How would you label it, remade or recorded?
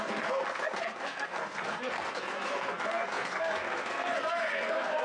remade